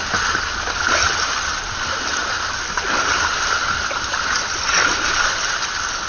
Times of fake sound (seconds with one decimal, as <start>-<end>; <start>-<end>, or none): none

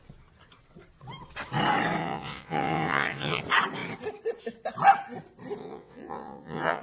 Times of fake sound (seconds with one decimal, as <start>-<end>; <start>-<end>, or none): 2.0-3.4; 5.6-6.8

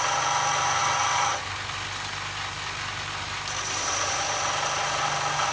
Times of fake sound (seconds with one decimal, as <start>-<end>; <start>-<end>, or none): none

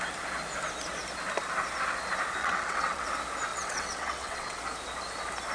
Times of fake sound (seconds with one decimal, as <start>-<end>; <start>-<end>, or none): 2.4-3.1; 3.5-4.6

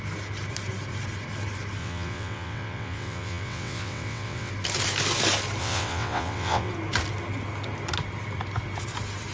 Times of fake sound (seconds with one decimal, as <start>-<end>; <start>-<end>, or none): 1.8-4.5; 5.6-6.7

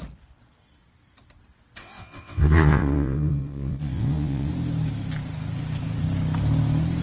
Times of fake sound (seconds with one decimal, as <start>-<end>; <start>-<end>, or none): 1.8-4.5